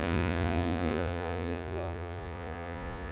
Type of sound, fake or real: fake